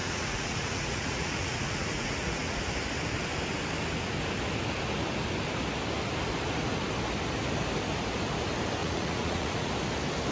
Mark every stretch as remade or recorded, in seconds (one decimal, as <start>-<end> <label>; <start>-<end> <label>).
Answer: 0.0-2.6 remade; 2.6-8.8 recorded; 8.8-9.7 remade; 9.7-10.3 recorded